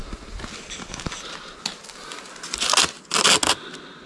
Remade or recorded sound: recorded